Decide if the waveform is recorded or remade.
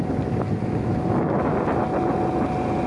recorded